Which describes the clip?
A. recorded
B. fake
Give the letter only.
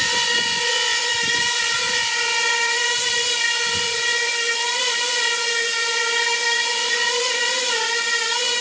B